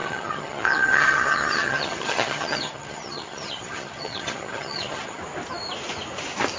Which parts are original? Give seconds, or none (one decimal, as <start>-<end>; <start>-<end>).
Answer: 5.2-6.6